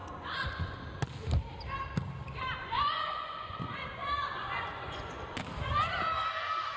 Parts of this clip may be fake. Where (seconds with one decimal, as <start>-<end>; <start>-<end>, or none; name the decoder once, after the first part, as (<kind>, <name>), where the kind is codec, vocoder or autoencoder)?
0.0-0.8 (vocoder, Vocos); 2.6-5.4